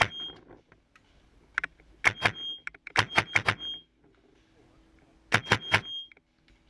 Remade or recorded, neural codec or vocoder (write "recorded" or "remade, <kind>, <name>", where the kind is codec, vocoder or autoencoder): recorded